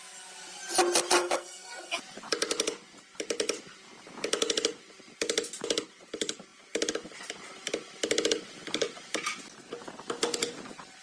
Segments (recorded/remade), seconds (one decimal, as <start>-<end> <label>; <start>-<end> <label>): 0.0-1.2 recorded; 1.2-2.0 remade; 2.0-11.0 recorded